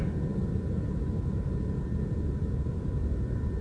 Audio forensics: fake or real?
real